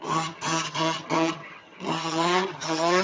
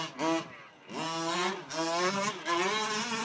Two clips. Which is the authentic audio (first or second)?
second